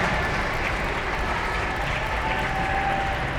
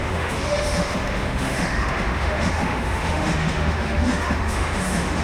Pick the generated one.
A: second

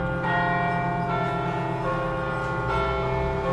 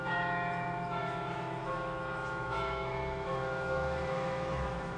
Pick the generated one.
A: second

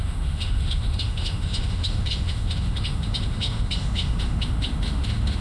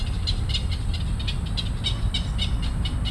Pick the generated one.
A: first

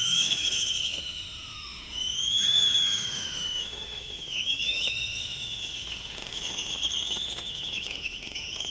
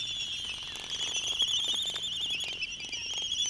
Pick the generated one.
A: first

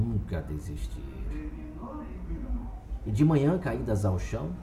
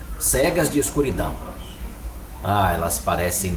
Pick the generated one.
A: second